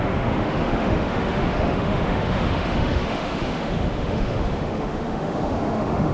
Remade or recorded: remade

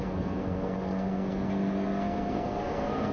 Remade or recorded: remade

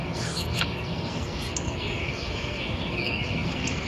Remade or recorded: remade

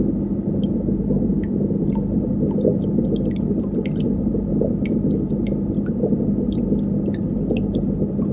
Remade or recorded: recorded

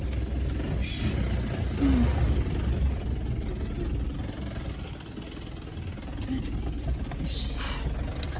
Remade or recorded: recorded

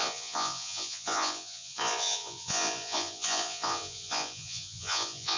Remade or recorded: remade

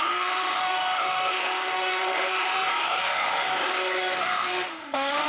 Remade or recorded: remade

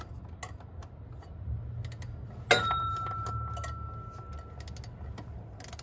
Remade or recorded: recorded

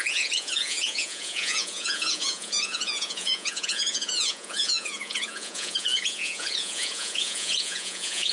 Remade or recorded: remade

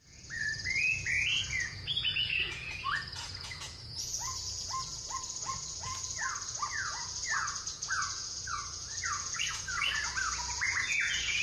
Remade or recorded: remade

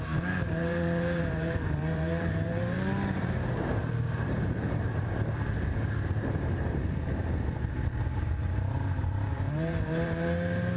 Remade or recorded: remade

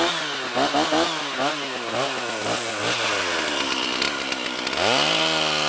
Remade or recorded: recorded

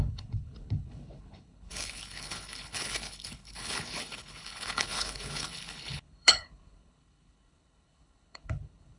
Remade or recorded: remade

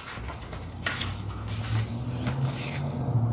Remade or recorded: recorded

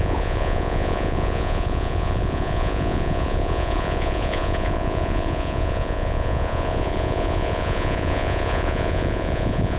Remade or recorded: remade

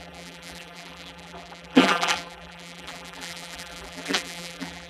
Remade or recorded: remade